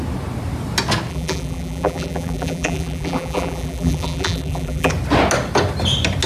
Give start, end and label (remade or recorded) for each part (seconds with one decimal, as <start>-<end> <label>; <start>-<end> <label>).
0.0-1.1 recorded; 1.1-4.9 remade; 4.9-6.3 recorded